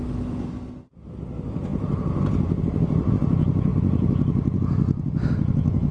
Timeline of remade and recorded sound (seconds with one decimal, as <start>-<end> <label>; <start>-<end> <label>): 0.0-5.9 recorded